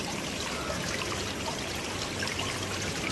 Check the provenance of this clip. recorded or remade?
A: recorded